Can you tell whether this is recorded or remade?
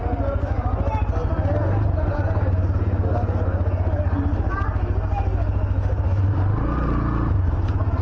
recorded